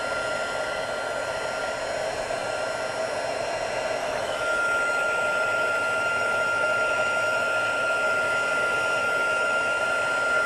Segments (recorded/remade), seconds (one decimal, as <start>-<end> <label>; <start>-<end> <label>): 0.0-4.0 recorded; 4.0-8.2 remade; 8.2-9.0 recorded; 9.0-9.8 remade; 9.8-10.5 recorded